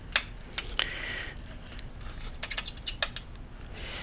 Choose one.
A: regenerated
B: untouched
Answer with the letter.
B